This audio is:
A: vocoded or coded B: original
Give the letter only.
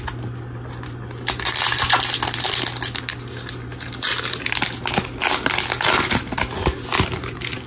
B